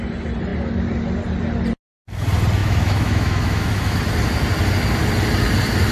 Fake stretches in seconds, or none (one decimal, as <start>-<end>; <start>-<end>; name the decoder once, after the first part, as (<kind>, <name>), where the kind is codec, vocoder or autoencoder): 2.6-4.0 (autoencoder, DAC-VAE)